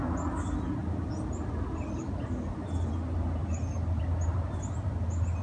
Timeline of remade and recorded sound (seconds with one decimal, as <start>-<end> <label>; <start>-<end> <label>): 0.0-5.4 recorded